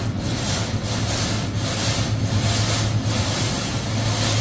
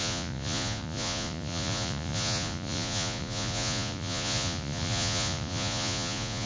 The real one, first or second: first